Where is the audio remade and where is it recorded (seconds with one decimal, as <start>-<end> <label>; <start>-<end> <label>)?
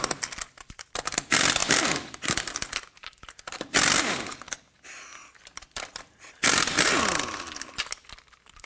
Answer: 0.0-8.7 recorded